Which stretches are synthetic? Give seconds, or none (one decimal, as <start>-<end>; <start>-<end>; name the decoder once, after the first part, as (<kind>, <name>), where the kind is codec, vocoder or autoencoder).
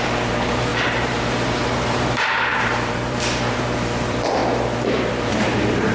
0.0-4.4 (vocoder, BigVGAN v2); 5.1-5.9